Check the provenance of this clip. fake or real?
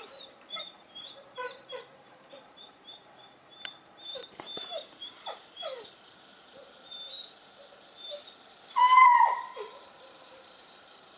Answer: fake